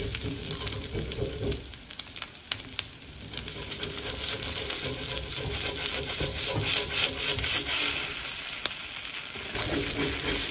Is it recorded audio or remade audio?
recorded